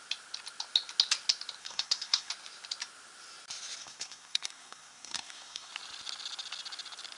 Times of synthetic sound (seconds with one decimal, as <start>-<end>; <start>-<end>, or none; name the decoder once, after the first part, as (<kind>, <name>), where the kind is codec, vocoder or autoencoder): 1.6-2.3 (codec, SNAC); 3.8-5.7